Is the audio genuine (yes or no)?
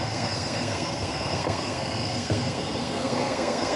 no